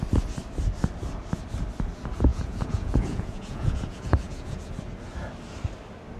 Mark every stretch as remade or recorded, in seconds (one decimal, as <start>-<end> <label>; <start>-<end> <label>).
0.0-2.3 recorded; 2.3-4.7 remade; 4.7-6.2 recorded